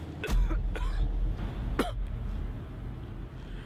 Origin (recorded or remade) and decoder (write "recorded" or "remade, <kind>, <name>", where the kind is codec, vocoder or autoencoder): recorded